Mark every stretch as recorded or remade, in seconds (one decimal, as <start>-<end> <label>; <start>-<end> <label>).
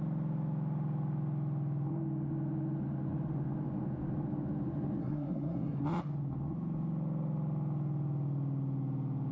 0.0-5.0 recorded; 5.0-5.8 remade; 5.8-9.3 recorded